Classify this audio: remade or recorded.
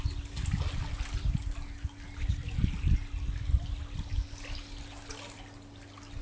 recorded